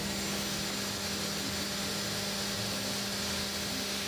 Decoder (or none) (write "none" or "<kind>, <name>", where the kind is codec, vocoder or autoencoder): none